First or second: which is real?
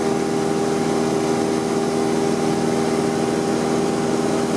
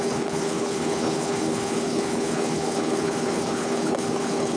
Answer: first